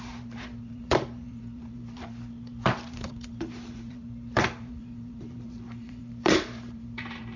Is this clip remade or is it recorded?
remade